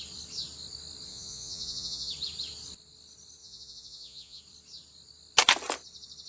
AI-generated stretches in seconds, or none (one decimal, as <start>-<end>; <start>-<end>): 1.1-2.1; 3.4-4.4